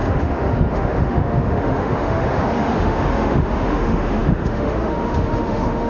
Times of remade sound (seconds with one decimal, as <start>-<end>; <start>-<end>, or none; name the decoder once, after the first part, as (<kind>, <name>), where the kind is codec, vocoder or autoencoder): 0.0-5.9 (autoencoder, DAC-VAE)